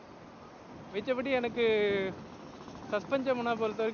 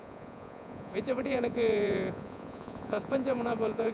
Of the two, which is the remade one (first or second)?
second